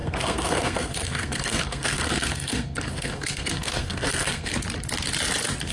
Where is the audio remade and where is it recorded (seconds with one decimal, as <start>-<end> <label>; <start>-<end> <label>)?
0.0-4.5 remade; 4.5-5.7 recorded